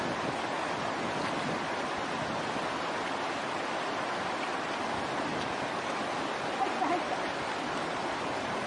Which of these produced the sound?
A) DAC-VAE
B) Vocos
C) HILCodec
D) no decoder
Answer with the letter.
D